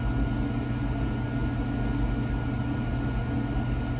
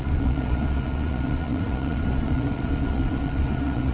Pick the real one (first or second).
first